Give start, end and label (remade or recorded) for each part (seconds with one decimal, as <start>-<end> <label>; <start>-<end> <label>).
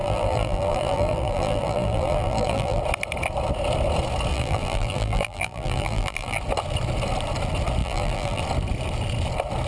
0.0-2.8 remade; 2.8-4.3 recorded; 4.3-6.4 remade; 6.4-7.8 recorded; 7.8-8.4 remade; 8.4-9.7 recorded